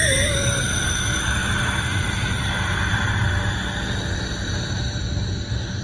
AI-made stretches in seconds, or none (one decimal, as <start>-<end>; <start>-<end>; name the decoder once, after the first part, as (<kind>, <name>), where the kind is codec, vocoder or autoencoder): none